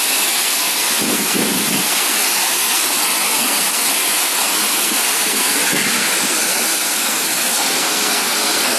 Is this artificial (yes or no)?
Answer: yes